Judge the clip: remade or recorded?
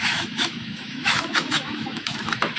remade